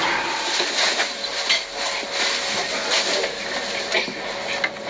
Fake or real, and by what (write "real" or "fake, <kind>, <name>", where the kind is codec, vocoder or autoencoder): real